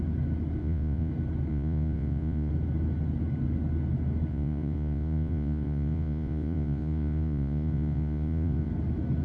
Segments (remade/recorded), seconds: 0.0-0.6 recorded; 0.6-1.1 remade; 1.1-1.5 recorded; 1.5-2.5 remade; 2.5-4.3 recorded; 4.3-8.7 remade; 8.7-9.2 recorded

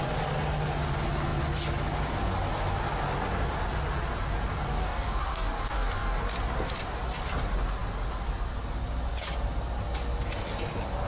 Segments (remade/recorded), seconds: 0.0-4.7 recorded; 4.7-6.2 remade; 6.2-11.1 recorded

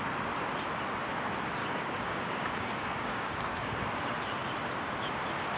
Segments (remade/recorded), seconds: 0.0-1.6 recorded; 1.6-3.8 remade; 3.8-5.6 recorded

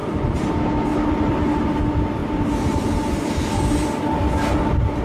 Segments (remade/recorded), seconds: 0.0-0.5 remade; 0.5-0.9 recorded; 0.9-1.8 remade; 1.8-2.2 recorded; 2.2-5.0 remade

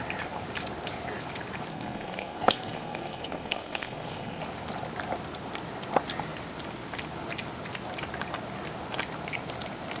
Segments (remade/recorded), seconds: 0.0-1.7 recorded; 1.7-4.4 remade; 4.4-10.0 recorded